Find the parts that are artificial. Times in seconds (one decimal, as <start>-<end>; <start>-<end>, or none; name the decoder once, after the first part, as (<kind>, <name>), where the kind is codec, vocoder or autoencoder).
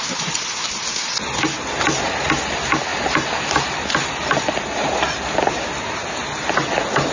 none